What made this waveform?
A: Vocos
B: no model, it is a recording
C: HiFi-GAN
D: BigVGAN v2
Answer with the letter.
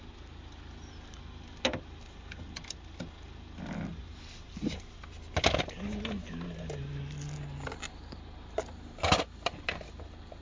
B